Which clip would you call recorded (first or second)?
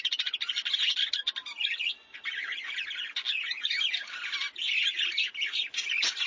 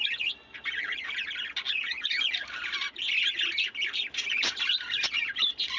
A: first